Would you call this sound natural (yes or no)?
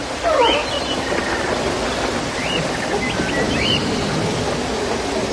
yes